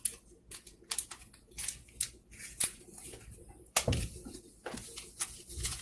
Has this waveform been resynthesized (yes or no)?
yes